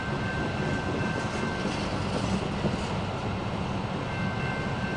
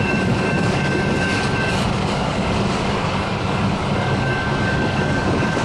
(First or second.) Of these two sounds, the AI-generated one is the second